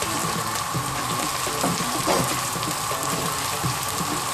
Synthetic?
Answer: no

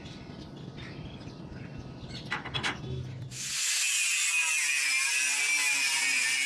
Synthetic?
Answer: no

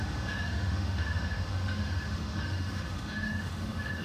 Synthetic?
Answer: yes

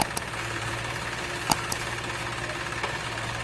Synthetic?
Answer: no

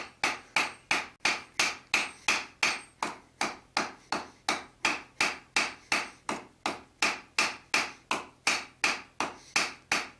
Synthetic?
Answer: no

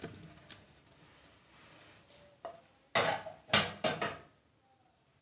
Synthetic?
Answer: no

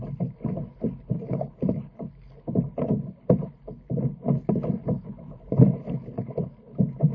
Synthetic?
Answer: no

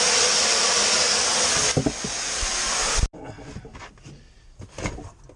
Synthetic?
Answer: no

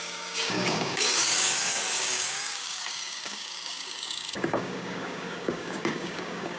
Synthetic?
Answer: yes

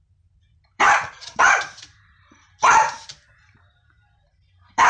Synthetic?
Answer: yes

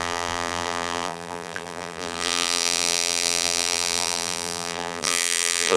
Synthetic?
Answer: yes